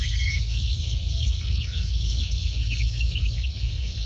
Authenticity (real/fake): fake